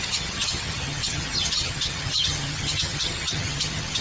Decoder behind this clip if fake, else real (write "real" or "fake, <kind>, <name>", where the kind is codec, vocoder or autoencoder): fake, vocoder, HiFi-GAN